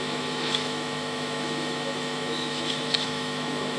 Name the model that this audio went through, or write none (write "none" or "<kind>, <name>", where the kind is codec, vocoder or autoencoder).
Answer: autoencoder, DAC-VAE